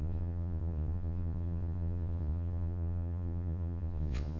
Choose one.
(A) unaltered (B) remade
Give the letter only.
B